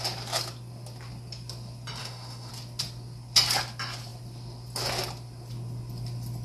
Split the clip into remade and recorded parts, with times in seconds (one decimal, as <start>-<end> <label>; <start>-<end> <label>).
0.0-2.0 recorded; 2.0-2.5 remade; 2.5-6.4 recorded